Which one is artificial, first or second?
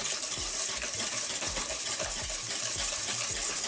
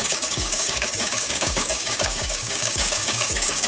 second